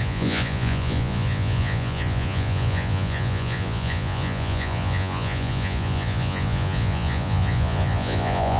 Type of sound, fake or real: fake